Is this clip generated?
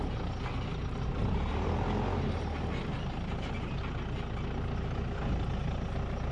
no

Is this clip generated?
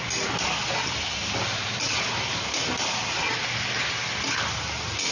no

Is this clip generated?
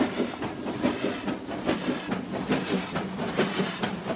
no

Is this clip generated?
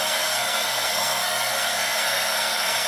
yes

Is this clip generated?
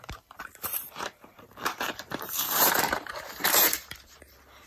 yes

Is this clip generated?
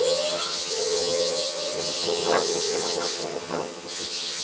yes